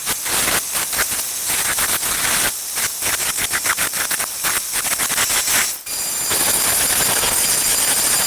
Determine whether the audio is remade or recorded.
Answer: recorded